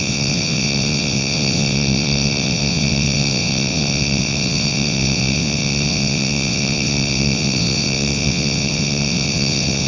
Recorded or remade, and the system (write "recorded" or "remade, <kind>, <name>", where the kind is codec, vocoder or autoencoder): remade, vocoder, WaveNeXt